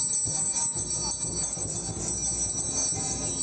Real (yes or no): yes